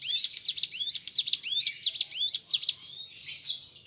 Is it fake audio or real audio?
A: real